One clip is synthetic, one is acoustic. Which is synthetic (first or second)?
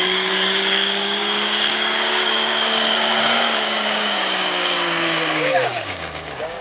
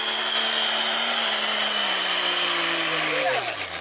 first